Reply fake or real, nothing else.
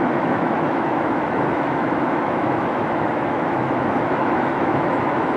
fake